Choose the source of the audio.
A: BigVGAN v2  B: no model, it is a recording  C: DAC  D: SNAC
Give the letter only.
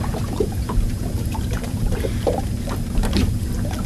A